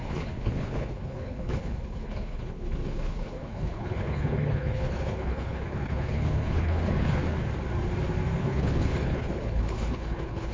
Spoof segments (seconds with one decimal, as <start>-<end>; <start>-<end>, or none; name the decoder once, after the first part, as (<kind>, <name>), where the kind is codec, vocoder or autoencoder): 0.0-7.2 (codec, HILCodec); 8.4-10.5